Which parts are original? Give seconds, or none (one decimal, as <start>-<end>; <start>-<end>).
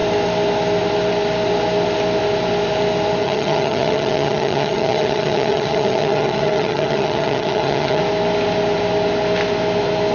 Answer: 0.0-3.2; 8.0-10.1